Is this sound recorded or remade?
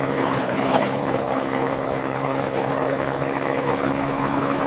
remade